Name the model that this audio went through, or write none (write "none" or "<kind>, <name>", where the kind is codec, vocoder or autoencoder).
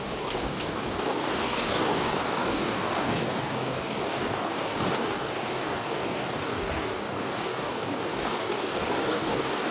codec, DAC